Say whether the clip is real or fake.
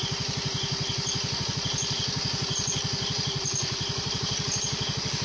real